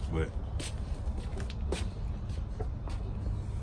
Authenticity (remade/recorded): recorded